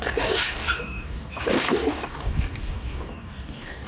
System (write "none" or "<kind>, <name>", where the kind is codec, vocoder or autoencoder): codec, DAC